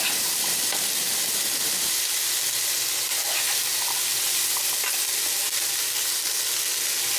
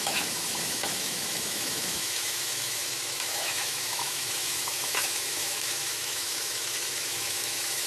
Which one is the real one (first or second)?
first